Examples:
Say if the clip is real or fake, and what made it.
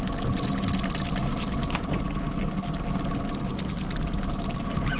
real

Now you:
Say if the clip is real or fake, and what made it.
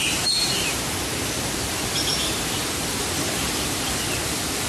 real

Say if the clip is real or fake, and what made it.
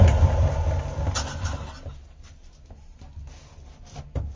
real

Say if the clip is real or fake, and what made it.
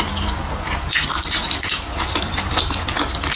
real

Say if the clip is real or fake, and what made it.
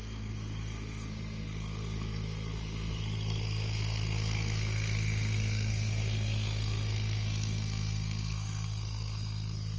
fake, codec, SNAC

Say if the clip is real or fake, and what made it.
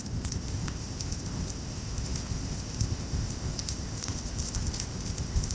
fake, codec, ZipCodec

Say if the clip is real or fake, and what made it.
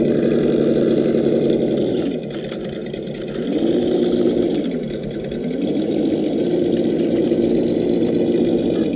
real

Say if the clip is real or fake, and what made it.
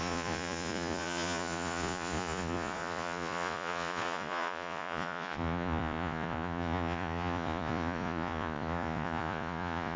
fake, vocoder, Vocos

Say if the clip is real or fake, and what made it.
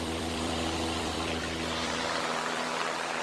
fake, vocoder, BigVGAN v2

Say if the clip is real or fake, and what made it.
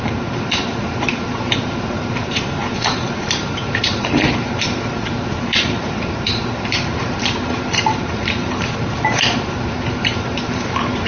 fake, vocoder, BigVGAN v2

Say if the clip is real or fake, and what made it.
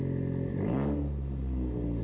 real